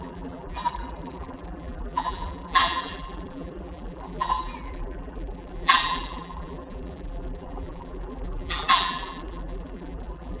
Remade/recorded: remade